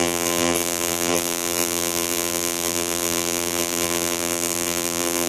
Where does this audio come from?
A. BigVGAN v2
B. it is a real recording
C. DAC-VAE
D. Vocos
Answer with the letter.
A